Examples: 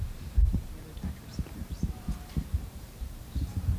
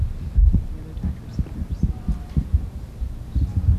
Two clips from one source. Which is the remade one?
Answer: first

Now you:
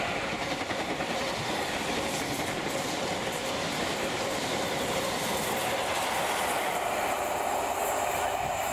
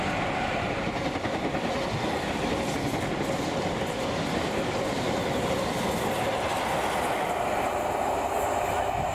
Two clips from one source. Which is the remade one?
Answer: first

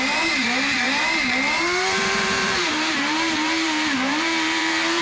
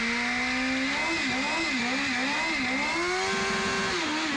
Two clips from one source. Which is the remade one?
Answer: first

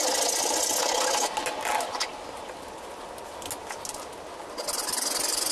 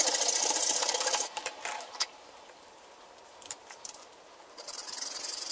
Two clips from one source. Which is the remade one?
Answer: second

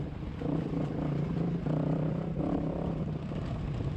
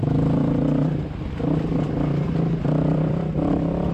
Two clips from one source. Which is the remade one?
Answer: first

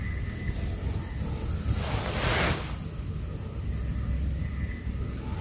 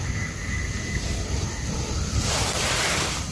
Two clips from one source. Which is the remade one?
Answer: second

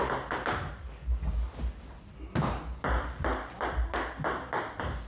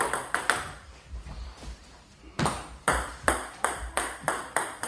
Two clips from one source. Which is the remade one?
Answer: second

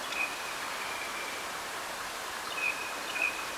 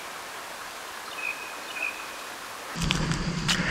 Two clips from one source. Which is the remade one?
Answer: first